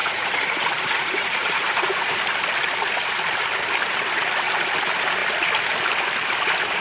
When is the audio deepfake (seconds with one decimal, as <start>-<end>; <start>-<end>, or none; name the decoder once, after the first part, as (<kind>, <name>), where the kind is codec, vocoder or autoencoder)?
0.0-2.1 (vocoder, Vocos)